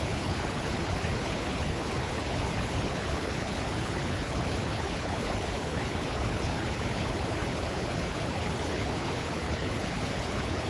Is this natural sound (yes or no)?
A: no